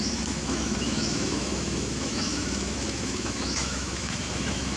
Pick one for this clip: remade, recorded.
remade